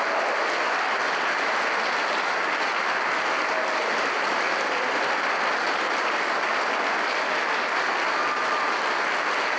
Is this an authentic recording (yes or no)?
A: yes